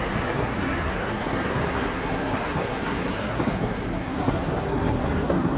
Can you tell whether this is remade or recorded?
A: remade